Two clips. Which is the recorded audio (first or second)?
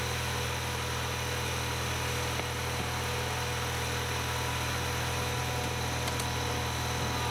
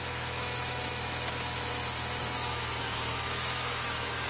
first